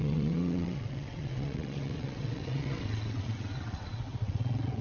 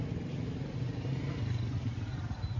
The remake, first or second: first